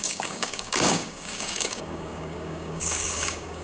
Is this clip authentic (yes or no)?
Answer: no